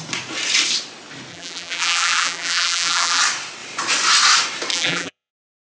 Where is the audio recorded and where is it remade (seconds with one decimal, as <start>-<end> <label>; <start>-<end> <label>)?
0.0-1.3 recorded; 1.3-3.2 remade; 3.2-4.7 recorded; 4.7-5.3 remade; 5.3-5.7 recorded